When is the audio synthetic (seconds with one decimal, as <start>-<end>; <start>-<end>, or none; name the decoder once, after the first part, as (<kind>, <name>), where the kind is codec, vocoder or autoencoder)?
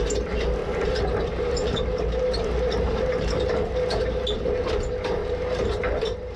0.6-4.0 (vocoder, BigVGAN v2); 5.2-6.4